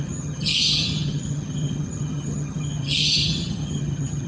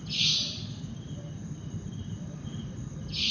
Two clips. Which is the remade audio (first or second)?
first